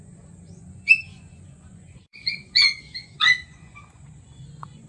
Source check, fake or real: fake